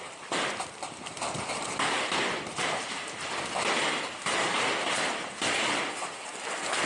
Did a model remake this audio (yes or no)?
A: no